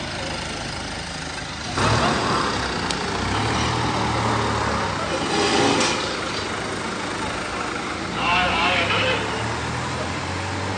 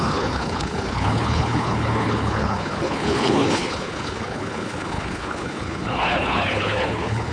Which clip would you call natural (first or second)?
first